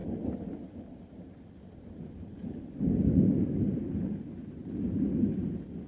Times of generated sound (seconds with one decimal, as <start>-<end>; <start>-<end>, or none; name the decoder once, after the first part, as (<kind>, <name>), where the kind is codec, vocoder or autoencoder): none